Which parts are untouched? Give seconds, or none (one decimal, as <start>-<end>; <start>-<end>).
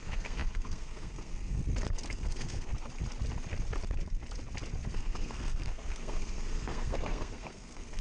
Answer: 1.6-2.1; 2.7-4.9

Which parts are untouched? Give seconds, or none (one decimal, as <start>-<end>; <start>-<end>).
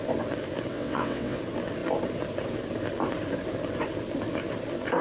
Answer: 0.0-0.7; 1.4-5.0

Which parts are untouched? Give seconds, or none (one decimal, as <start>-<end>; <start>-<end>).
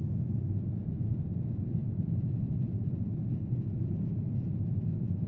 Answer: none